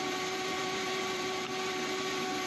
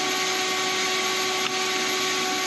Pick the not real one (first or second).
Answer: first